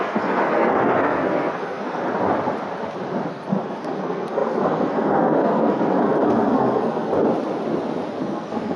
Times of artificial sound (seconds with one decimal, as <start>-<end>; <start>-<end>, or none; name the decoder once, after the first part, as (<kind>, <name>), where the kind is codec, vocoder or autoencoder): 0.0-2.0 (codec, SNAC); 3.3-7.1; 8.1-8.8